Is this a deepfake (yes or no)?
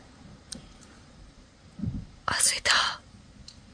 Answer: yes